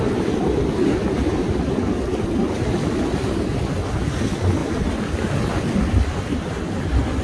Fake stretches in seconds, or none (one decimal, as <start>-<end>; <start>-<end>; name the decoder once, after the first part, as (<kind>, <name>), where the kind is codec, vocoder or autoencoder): none

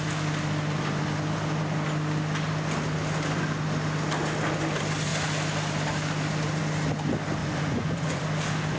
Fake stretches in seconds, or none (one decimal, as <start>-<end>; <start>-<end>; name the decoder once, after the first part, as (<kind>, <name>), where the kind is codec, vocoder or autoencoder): 7.4-8.2 (vocoder, Vocos)

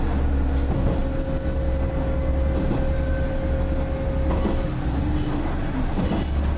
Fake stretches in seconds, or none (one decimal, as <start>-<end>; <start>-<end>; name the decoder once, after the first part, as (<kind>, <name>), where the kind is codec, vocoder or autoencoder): none